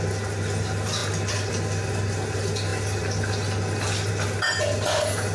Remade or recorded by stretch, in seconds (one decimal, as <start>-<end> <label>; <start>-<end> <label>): 0.0-5.3 recorded